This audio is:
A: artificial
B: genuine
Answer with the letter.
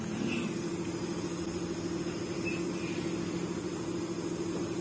B